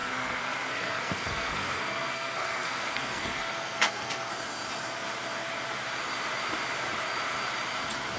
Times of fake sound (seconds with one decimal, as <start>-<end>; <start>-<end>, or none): 0.0-4.3